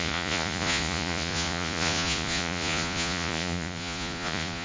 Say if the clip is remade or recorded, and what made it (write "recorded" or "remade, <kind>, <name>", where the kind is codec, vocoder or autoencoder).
remade, vocoder, Vocos